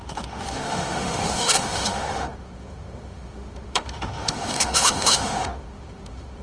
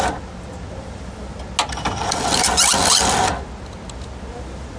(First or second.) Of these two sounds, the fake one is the first